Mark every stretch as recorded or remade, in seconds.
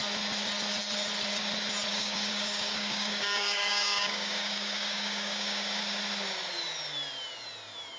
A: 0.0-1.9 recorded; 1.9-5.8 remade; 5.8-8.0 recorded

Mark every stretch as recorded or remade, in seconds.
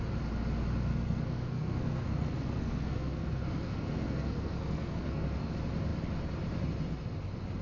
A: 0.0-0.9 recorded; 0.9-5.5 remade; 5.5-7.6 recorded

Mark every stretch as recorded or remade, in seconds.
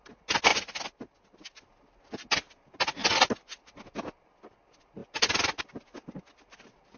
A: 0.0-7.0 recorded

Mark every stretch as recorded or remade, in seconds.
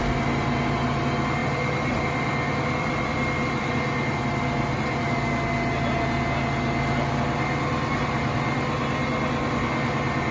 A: 0.0-1.4 recorded; 1.4-4.2 remade; 4.2-10.3 recorded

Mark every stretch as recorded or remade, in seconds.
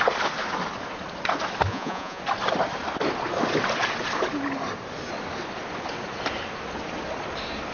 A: 0.0-1.7 recorded; 1.7-2.2 remade; 2.2-7.7 recorded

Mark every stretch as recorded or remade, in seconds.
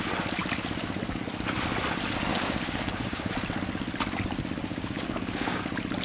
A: 0.0-2.3 recorded; 2.3-3.3 remade; 3.3-4.7 recorded; 4.7-5.6 remade; 5.6-6.0 recorded